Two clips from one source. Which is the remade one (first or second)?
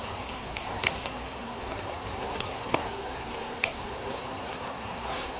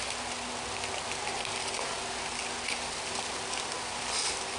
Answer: first